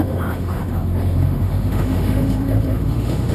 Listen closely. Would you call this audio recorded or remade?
remade